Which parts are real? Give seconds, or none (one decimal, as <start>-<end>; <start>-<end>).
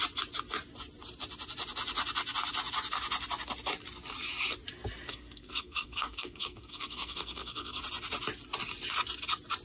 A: 0.0-5.1; 7.8-9.6